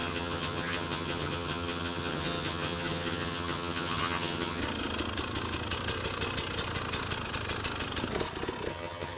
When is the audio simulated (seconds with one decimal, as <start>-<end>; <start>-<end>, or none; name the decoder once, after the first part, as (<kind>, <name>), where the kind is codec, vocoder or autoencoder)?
0.0-4.6 (vocoder, HiFi-GAN); 8.7-9.2